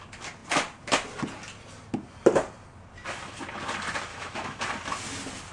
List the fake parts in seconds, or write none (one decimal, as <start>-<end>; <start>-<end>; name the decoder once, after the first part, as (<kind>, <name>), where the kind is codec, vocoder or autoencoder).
4.1-4.6 (autoencoder, DAC-VAE)